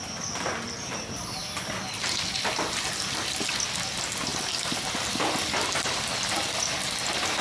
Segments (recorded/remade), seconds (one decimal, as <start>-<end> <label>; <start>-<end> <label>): 0.0-7.4 recorded